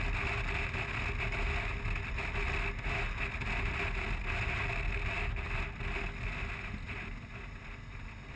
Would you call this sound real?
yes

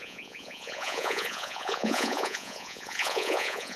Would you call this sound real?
no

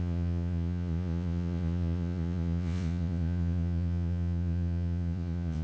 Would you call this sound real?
no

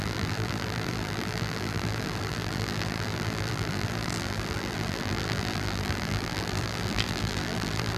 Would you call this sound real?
no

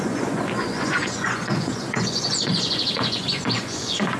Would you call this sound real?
no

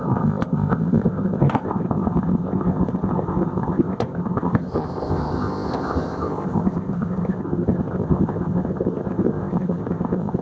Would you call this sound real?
no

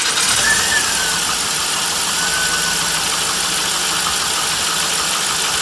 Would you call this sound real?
yes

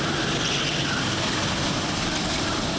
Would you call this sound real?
yes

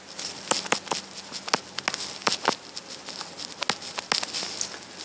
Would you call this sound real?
yes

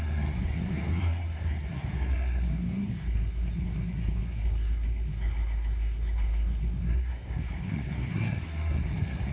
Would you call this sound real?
no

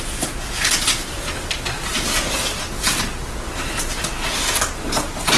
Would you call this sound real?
yes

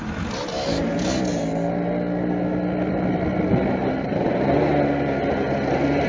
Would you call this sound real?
yes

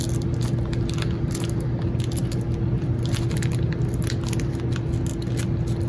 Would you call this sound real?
yes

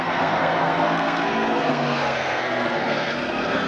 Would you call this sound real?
no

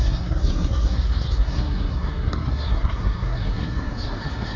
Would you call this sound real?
no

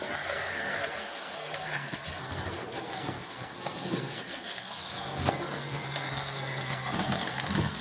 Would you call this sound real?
no